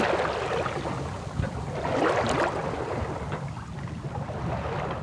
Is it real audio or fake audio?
real